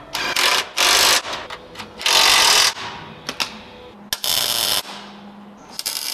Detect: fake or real real